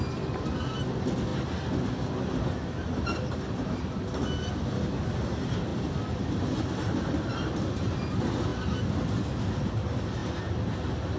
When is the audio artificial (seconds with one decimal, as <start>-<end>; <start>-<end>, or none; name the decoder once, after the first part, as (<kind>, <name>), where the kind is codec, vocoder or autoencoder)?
none